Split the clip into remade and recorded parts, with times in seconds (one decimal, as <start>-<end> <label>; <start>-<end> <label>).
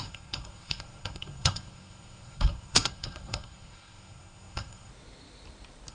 0.0-4.9 remade; 4.9-5.9 recorded